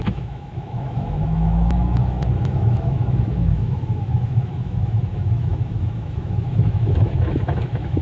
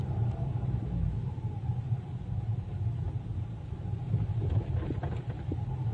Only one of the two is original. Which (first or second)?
second